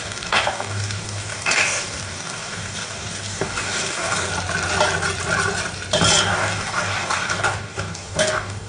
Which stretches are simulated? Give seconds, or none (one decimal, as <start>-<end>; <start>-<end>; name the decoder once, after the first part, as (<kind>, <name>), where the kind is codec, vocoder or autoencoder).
0.0-4.3 (codec, DAC); 6.2-8.7